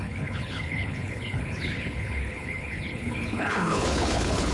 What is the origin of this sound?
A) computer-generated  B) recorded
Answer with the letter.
A